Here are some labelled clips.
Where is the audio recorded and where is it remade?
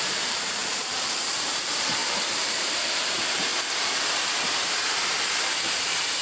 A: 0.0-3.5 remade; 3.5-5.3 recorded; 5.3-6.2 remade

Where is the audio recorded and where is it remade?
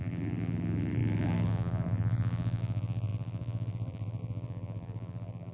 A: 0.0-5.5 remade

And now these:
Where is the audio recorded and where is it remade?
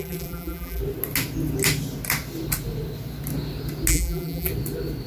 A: 0.0-0.8 remade; 0.8-3.9 recorded; 3.9-4.5 remade; 4.5-5.1 recorded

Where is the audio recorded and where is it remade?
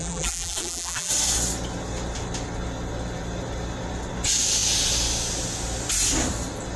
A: 0.0-1.1 remade; 1.1-6.8 recorded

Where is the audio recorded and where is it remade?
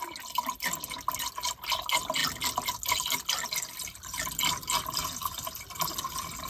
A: 0.0-6.5 recorded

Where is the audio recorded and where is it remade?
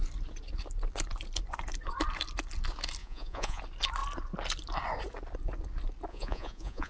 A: 0.0-3.0 recorded; 3.0-3.6 remade; 3.6-6.1 recorded; 6.1-6.9 remade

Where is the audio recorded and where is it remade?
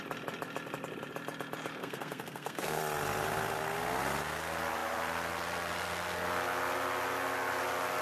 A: 0.0-1.8 recorded; 1.8-2.8 remade; 2.8-8.0 recorded